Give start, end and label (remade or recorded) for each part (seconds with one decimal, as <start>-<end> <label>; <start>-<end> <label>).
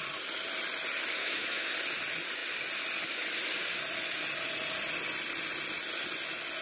0.0-1.2 recorded; 1.2-1.7 remade; 1.7-6.6 recorded